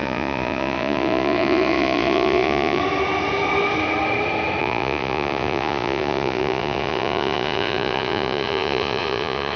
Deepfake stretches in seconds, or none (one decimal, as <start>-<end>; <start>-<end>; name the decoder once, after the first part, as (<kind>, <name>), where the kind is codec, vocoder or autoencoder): 0.0-2.8 (vocoder, Vocos); 4.6-9.6